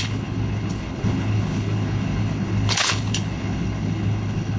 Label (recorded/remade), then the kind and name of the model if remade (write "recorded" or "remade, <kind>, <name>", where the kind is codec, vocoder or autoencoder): remade, codec, HILCodec